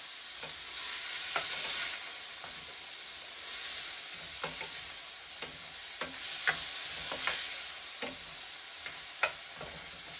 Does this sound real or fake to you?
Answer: real